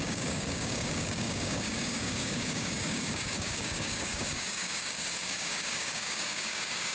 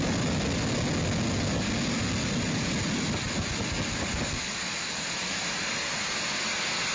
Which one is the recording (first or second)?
second